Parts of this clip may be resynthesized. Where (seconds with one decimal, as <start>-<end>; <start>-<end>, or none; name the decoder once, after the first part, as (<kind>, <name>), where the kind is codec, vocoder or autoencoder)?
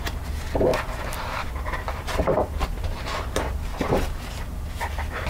0.7-3.9 (vocoder, BigVGAN v2)